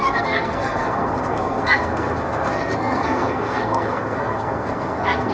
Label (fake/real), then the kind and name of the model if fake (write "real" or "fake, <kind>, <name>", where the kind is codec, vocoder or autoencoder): fake, codec, SNAC